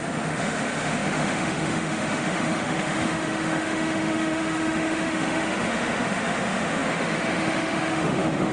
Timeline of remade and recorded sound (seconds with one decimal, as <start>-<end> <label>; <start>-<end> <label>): 0.0-8.5 remade